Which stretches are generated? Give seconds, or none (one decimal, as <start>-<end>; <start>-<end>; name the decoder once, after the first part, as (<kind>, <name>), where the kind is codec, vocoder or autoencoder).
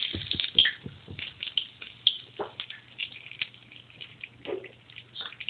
none